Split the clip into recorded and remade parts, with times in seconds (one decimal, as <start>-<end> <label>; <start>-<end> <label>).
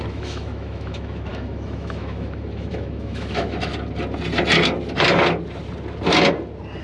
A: 0.0-3.7 remade; 3.7-6.8 recorded